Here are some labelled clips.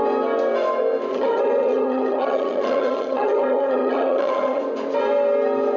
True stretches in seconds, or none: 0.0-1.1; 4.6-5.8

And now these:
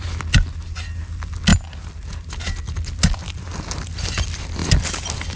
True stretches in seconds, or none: 0.0-5.4

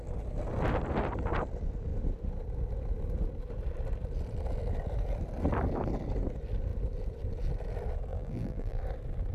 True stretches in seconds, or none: 0.0-8.1; 8.8-9.3

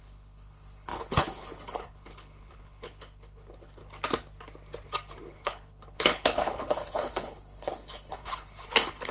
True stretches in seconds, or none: 3.8-5.2

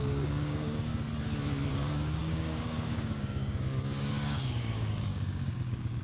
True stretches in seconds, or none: 0.9-1.7

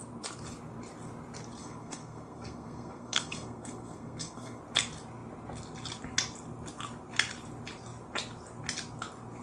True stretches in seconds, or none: 0.0-1.6; 4.6-9.4